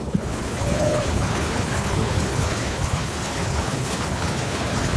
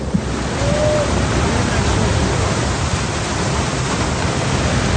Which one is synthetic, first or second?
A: first